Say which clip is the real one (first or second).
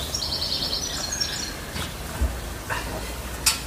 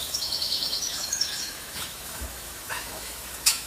first